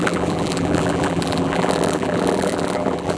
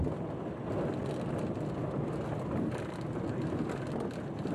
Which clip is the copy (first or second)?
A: first